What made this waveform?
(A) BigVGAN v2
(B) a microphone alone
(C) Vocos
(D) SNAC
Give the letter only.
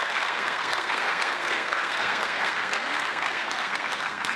D